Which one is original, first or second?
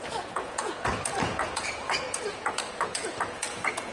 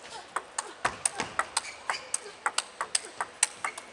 second